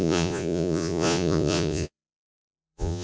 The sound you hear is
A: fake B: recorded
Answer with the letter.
A